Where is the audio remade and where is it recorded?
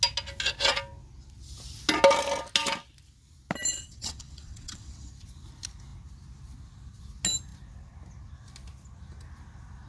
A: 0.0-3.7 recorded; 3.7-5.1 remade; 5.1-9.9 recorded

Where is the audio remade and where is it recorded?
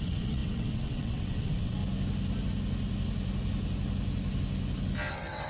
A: 0.0-1.8 remade; 1.8-5.1 recorded; 5.1-5.5 remade